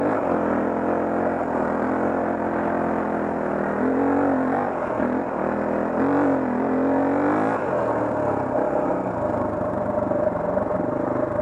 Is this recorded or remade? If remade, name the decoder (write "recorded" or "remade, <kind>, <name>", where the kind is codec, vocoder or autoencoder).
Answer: recorded